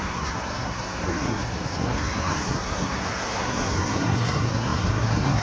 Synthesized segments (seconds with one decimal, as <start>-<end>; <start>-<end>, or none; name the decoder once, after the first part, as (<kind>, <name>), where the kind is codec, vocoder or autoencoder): 0.0-5.4 (codec, SNAC)